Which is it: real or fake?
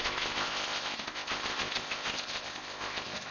fake